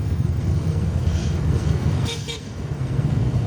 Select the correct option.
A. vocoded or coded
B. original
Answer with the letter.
A